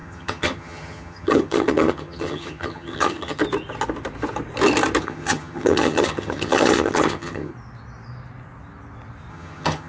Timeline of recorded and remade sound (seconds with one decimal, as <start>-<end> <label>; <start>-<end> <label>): 0.0-3.4 remade; 3.4-5.0 recorded; 5.0-7.5 remade; 7.5-9.3 recorded; 9.3-9.9 remade